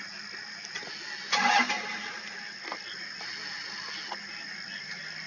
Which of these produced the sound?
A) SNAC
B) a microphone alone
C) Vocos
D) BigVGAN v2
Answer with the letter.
B